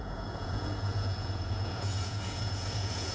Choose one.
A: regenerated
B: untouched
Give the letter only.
A